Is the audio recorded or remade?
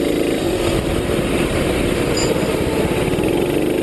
recorded